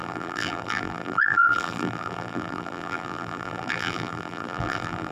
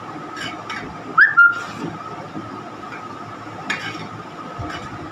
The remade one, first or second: first